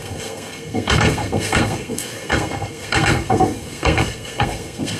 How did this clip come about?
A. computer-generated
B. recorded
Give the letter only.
A